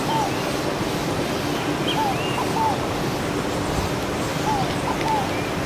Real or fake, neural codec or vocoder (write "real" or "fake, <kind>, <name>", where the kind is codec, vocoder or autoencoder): real